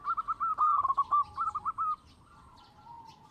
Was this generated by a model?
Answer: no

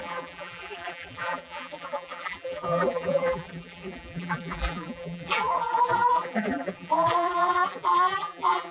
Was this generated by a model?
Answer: yes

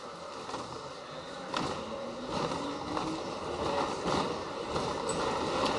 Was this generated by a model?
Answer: no